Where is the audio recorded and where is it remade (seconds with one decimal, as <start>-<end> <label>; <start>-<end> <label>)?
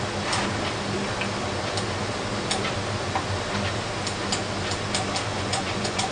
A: 0.0-5.3 recorded; 5.3-6.1 remade